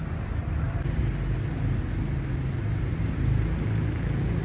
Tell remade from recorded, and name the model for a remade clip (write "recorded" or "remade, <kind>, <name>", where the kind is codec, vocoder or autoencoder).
recorded